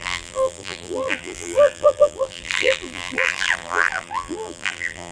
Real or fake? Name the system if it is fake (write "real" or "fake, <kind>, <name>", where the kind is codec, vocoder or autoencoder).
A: fake, vocoder, BigVGAN v2